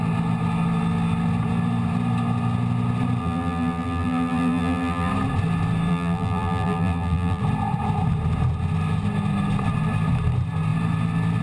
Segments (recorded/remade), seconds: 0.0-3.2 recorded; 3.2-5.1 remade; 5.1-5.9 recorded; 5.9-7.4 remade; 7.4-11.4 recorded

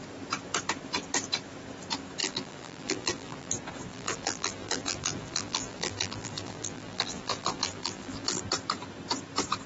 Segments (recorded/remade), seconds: 0.0-2.2 recorded; 2.2-3.5 remade; 3.5-3.9 recorded; 3.9-8.4 remade; 8.4-9.7 recorded

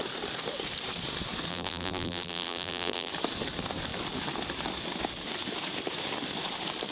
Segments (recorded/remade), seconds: 0.0-1.5 recorded; 1.5-3.1 remade; 3.1-6.9 recorded

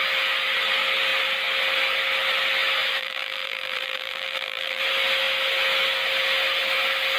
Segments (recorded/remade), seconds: 0.0-3.0 recorded; 3.0-4.8 remade; 4.8-7.2 recorded

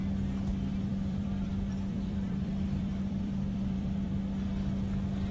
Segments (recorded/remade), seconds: 0.0-0.9 recorded; 0.9-4.1 remade; 4.1-5.3 recorded

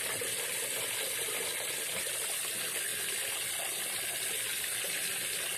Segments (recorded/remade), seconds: 0.0-5.6 recorded